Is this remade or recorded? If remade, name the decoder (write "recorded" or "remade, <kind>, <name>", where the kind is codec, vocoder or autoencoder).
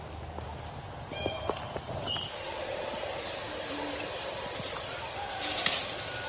recorded